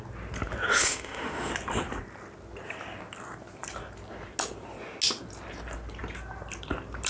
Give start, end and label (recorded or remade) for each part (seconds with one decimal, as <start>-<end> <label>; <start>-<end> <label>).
0.0-0.7 recorded; 0.7-1.5 remade; 1.5-7.1 recorded